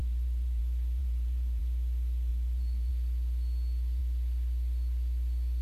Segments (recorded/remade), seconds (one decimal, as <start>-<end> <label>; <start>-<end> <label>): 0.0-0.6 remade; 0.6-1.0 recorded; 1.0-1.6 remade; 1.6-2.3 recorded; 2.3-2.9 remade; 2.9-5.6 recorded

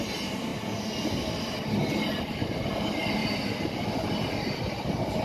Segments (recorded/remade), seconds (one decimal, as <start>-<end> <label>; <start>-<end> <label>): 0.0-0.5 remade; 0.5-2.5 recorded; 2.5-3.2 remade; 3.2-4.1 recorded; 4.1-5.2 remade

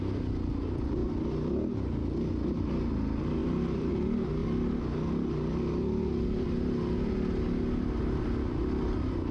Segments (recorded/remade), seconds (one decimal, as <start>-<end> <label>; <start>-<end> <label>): 0.0-3.4 recorded; 3.4-3.9 remade; 3.9-9.3 recorded

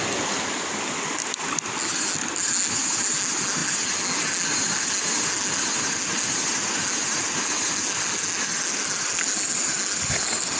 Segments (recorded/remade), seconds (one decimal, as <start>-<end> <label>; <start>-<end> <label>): 0.0-10.6 recorded